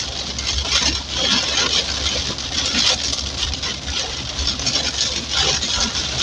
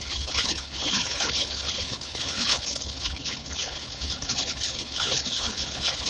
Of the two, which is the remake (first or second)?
second